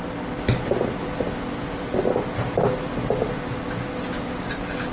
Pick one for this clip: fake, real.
real